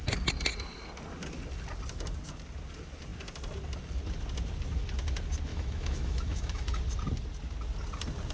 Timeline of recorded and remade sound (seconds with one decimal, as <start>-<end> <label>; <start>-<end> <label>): 0.0-5.5 recorded; 5.5-6.8 remade; 6.8-8.3 recorded